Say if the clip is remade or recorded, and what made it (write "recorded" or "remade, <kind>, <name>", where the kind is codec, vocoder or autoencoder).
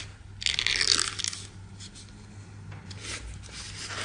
recorded